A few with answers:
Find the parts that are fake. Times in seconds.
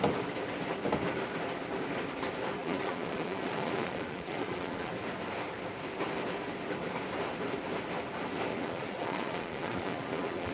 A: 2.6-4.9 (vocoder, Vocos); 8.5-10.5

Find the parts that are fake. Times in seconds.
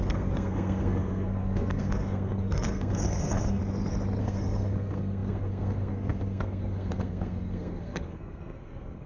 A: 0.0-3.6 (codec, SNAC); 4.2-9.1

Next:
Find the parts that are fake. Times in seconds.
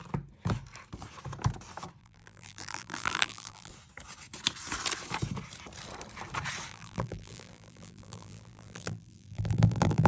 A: 2.0-3.7 (vocoder, BigVGAN v2); 6.7-10.1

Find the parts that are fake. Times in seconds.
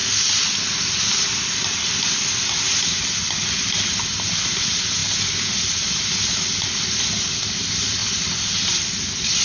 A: 0.0-3.3 (vocoder, BigVGAN v2); 8.0-9.4